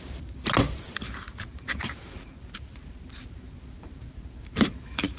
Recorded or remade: remade